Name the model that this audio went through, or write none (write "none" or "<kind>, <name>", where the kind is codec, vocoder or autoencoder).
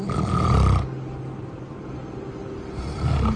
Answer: none